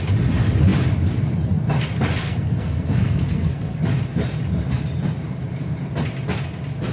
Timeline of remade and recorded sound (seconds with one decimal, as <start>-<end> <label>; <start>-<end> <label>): 0.0-2.2 recorded; 2.2-3.8 remade; 3.8-6.9 recorded